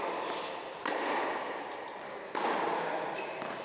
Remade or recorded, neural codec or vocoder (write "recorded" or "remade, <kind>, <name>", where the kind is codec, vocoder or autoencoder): recorded